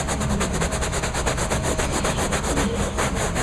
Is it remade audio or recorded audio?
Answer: recorded